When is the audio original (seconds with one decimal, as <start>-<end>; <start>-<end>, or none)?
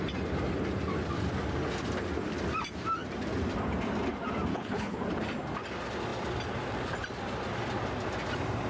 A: 0.0-4.5; 5.0-8.7